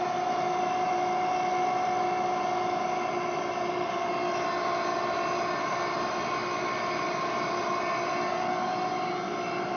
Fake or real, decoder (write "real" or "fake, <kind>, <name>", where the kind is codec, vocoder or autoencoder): real